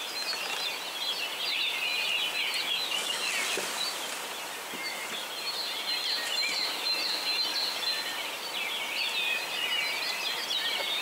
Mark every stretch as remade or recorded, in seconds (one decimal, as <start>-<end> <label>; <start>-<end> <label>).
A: 0.0-2.6 recorded; 2.6-3.3 remade; 3.3-11.0 recorded

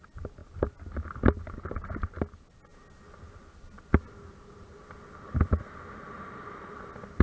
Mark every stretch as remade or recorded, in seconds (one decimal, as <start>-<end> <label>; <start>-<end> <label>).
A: 0.0-7.2 recorded

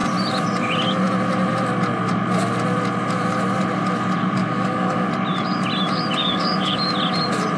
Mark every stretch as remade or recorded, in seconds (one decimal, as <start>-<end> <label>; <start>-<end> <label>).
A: 0.0-4.4 recorded; 4.4-5.1 remade; 5.1-6.2 recorded; 6.2-6.8 remade; 6.8-7.6 recorded

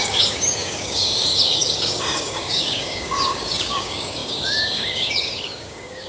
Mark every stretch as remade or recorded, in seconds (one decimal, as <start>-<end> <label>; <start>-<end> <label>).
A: 0.0-6.1 remade

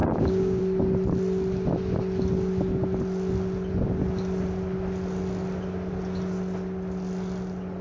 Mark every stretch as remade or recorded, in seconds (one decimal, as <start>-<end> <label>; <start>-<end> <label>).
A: 0.0-0.6 remade; 0.6-7.8 recorded

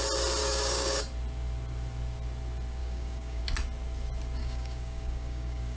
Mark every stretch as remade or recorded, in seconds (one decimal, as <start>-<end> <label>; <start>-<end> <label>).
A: 0.0-0.4 recorded; 0.4-1.0 remade; 1.0-2.8 recorded; 2.8-3.4 remade; 3.4-4.4 recorded; 4.4-5.8 remade